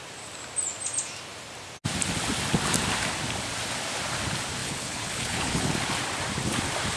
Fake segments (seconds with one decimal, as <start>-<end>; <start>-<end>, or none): 4.6-5.7